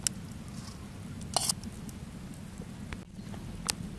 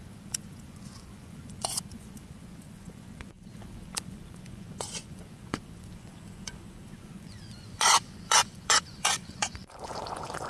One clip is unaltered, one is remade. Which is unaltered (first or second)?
first